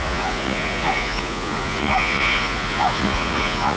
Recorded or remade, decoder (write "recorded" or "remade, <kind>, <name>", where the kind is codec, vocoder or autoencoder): remade, vocoder, Vocos